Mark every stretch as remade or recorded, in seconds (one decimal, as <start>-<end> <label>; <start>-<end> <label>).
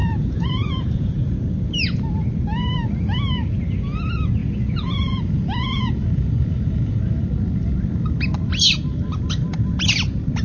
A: 0.0-1.2 remade; 1.2-4.4 recorded; 4.4-7.2 remade; 7.2-10.4 recorded